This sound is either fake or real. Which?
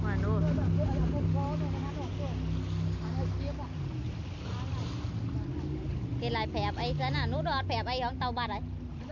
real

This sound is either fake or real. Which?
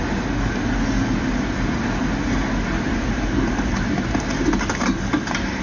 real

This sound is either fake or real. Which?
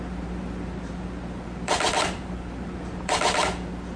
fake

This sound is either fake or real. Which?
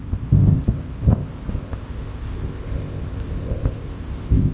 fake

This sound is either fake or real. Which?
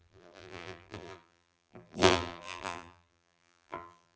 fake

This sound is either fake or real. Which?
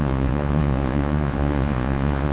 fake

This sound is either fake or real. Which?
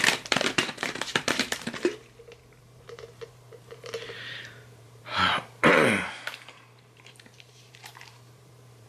fake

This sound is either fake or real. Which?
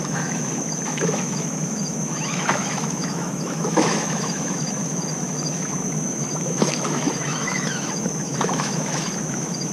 fake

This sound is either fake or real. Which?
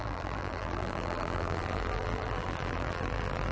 fake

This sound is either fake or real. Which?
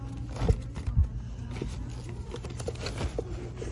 real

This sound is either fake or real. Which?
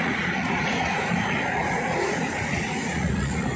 fake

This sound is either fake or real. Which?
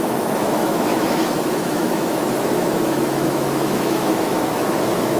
fake